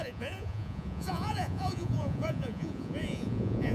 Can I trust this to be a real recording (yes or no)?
no